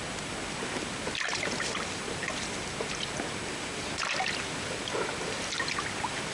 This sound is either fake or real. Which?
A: real